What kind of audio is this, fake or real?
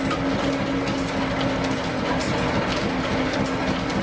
real